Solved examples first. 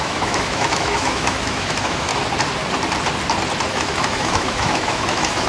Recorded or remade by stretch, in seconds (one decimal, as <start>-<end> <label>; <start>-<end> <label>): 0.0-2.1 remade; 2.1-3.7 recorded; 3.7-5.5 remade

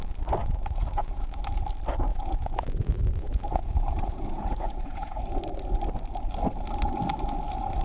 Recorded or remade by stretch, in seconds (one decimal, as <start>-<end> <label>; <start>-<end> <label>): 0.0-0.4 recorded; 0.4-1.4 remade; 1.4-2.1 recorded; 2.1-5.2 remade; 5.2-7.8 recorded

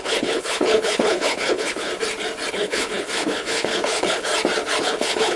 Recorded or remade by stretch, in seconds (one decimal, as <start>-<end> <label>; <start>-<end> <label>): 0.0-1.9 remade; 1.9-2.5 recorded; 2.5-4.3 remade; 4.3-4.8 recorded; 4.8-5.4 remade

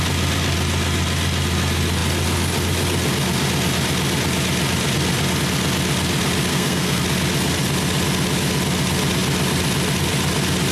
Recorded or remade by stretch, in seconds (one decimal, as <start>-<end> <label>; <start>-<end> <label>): 0.0-6.5 recorded; 6.5-7.0 remade; 7.0-10.7 recorded